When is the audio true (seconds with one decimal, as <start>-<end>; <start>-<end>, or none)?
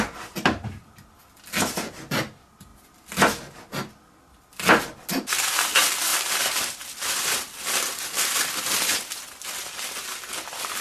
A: 0.0-6.1; 10.0-10.8